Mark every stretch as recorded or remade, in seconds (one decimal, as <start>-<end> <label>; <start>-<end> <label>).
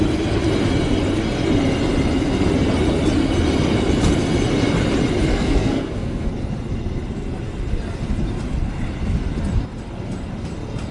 0.0-5.3 recorded; 5.3-6.3 remade; 6.3-10.9 recorded